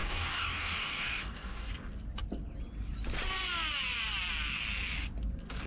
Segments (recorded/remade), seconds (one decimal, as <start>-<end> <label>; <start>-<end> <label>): 0.0-1.7 remade; 1.7-5.7 recorded

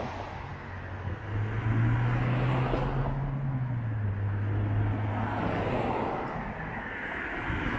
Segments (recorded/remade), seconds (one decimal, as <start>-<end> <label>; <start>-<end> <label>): 0.0-7.8 recorded

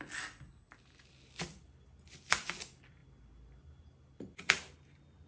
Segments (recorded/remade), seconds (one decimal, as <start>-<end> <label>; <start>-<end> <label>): 0.0-5.3 recorded

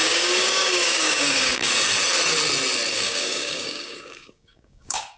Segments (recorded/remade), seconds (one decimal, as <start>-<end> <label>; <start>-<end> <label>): 0.0-1.7 remade; 1.7-2.9 recorded; 2.9-5.2 remade

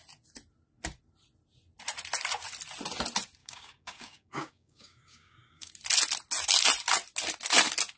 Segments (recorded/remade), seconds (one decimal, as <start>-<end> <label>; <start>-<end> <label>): 0.0-3.4 recorded; 3.4-5.7 remade; 5.7-8.0 recorded

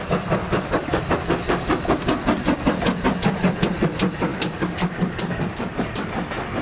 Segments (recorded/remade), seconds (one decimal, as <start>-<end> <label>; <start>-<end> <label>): 0.0-0.4 recorded; 0.4-1.0 remade; 1.0-4.3 recorded; 4.3-5.7 remade; 5.7-6.6 recorded